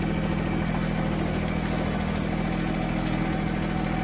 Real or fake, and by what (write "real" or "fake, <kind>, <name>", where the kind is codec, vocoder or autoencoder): real